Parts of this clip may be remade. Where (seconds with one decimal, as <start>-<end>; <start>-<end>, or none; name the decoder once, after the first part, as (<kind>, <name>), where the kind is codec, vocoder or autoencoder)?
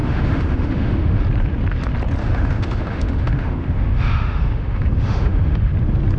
0.0-1.2 (autoencoder, DAC-VAE); 2.2-5.7